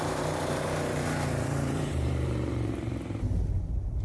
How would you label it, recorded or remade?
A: remade